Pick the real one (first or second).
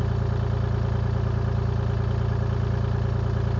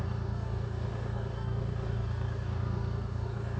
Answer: first